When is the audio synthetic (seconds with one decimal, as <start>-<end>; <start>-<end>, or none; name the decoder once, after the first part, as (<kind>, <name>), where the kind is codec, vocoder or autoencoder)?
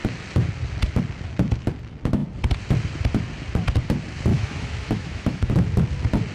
4.3-5.5 (autoencoder, DAC-VAE)